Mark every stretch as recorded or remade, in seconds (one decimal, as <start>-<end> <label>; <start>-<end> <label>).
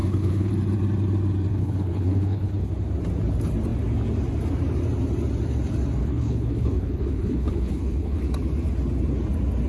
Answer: 0.0-0.5 remade; 0.5-1.5 recorded; 1.5-2.7 remade; 2.7-6.0 recorded; 6.0-8.2 remade; 8.2-9.7 recorded